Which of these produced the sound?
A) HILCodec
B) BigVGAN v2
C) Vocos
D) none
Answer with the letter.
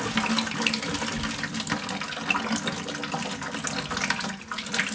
D